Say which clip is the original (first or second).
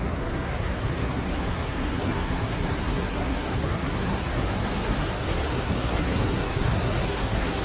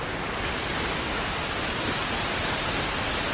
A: second